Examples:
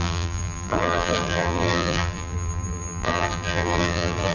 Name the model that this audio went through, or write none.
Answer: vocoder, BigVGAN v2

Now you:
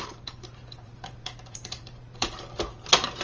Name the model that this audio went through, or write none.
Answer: vocoder, BigVGAN v2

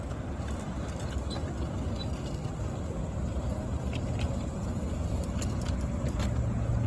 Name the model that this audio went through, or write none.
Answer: none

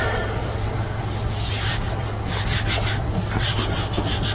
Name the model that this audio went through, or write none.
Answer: none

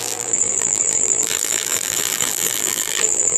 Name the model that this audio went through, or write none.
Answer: vocoder, BigVGAN v2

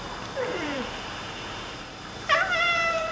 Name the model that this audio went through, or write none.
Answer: vocoder, BigVGAN v2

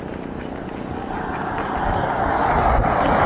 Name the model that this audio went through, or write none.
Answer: none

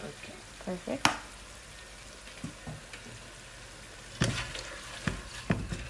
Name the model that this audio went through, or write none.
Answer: none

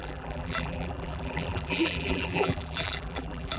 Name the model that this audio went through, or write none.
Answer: vocoder, BigVGAN v2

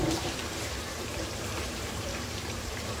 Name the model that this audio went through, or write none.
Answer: vocoder, BigVGAN v2